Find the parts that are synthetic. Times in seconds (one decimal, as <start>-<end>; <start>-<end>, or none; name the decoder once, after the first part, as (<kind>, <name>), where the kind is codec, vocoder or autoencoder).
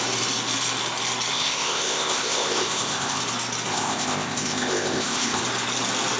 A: 1.3-3.2 (codec, ZipCodec); 3.7-5.4